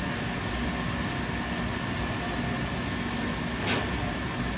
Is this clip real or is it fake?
real